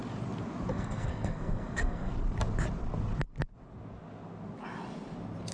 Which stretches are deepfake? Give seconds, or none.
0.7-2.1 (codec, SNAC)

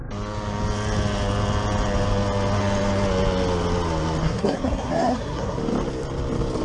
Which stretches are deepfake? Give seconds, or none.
4.2-5.6 (codec, SNAC)

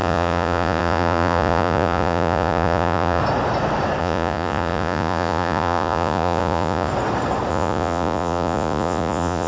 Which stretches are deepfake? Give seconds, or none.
0.0-3.2 (vocoder, Vocos); 4.0-6.9; 7.5-9.5

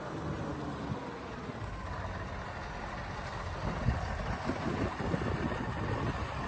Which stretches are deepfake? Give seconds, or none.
none

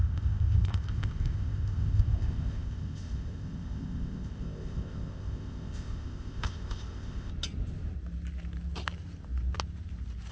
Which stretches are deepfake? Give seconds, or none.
0.0-7.3 (codec, ZipCodec)

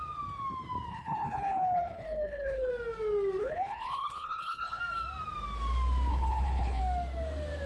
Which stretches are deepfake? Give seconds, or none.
0.9-2.7 (codec, HILCodec); 3.4-4.8; 6.1-6.8

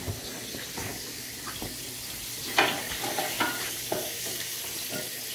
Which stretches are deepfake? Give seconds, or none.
0.9-1.5 (codec, DAC); 2.8-4.6